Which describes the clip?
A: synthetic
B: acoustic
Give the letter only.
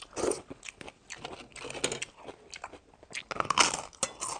B